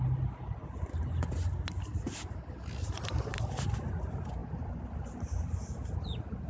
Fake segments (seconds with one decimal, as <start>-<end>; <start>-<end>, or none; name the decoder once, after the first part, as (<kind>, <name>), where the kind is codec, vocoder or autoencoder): none